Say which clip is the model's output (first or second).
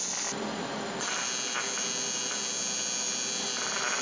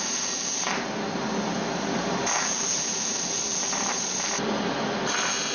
second